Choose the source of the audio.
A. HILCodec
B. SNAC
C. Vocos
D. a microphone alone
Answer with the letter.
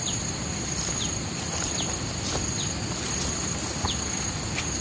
D